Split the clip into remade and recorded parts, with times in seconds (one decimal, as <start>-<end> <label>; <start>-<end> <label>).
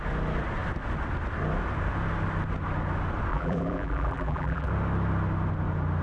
0.0-3.3 recorded; 3.3-4.7 remade; 4.7-6.0 recorded